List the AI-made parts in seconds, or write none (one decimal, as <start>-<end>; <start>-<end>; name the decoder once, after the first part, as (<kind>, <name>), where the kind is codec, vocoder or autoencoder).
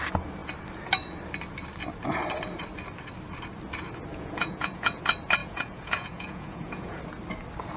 4.1-5.0 (vocoder, Vocos); 5.4-7.0